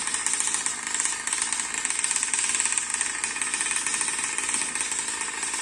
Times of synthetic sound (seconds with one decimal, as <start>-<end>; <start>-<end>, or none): none